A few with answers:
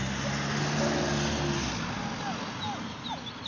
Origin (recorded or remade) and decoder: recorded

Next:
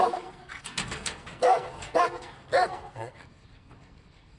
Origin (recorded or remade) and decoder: remade, codec, SNAC